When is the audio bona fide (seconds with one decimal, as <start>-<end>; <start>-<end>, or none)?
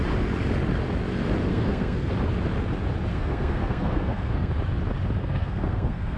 0.0-1.5; 2.1-3.1; 4.5-5.2